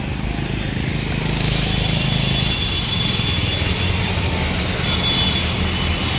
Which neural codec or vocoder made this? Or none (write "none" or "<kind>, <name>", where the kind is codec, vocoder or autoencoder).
none